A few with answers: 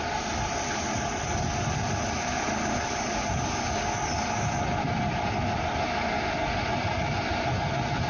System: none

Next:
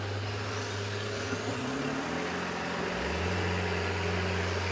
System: none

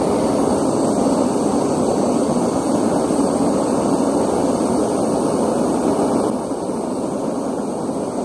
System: none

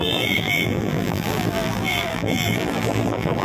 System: vocoder, BigVGAN v2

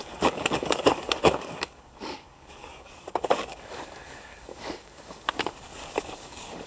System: codec, DAC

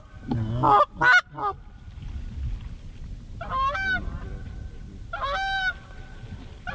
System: none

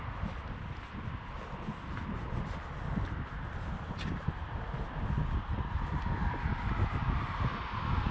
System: none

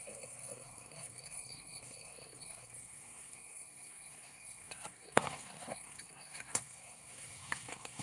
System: codec, SNAC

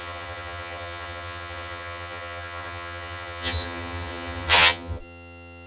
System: vocoder, HiFi-GAN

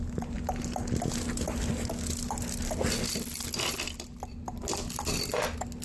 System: none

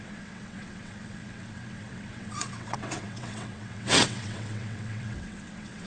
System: vocoder, WaveNeXt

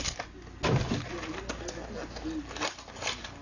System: none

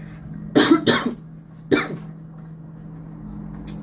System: none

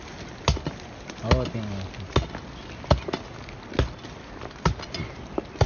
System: none